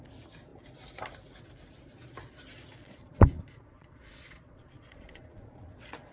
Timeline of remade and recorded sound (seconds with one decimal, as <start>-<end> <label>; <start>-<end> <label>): 0.0-2.8 recorded; 2.8-6.1 remade